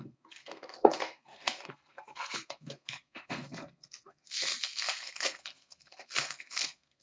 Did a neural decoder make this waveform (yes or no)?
yes